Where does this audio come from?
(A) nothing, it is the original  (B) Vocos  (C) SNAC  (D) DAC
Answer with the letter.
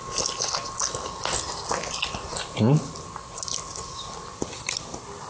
A